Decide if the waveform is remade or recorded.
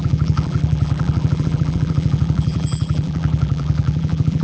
remade